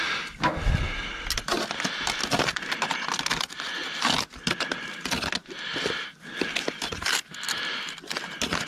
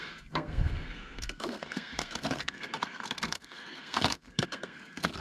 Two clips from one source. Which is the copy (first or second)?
second